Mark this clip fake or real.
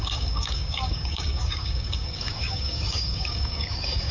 fake